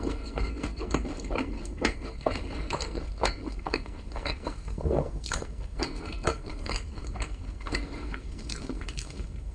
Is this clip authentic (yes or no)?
no